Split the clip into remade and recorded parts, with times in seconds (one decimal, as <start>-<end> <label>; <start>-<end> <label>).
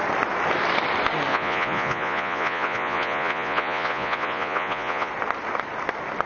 0.0-1.3 recorded; 1.3-5.1 remade; 5.1-6.3 recorded